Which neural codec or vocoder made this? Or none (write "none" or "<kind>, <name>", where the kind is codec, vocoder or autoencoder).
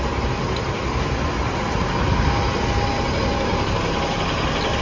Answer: none